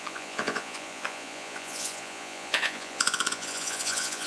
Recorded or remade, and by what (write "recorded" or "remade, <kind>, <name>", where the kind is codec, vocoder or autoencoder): remade, vocoder, Vocos